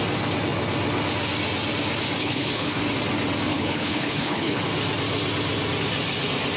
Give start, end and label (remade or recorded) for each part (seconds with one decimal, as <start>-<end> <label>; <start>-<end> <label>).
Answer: 0.0-2.2 recorded; 2.2-2.8 remade; 2.8-3.5 recorded; 3.5-4.6 remade; 4.6-6.6 recorded